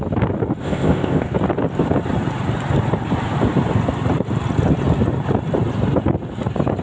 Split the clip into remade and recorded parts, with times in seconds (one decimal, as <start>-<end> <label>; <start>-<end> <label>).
0.0-0.6 recorded; 0.6-1.3 remade; 1.3-6.8 recorded